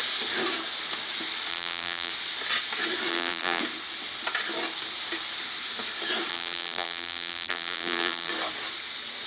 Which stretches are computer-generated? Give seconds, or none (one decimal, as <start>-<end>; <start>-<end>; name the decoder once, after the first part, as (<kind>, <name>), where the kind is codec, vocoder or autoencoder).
1.5-2.1 (vocoder, BigVGAN v2); 3.1-3.6; 6.3-8.3